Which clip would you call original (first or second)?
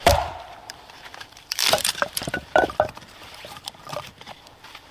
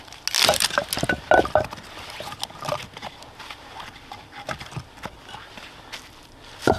second